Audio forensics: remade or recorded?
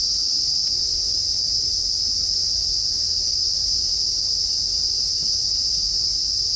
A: recorded